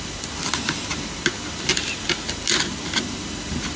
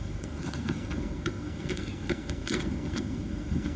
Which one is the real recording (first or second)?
first